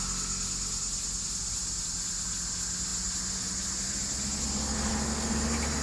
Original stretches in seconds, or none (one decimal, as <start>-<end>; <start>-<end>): 0.0-5.8